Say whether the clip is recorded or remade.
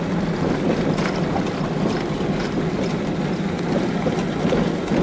recorded